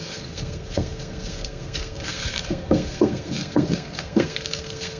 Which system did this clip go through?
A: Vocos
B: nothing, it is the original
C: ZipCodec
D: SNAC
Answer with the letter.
D